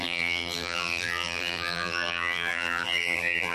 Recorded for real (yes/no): no